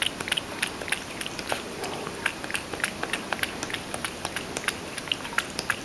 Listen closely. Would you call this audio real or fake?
real